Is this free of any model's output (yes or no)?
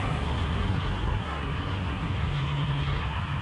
no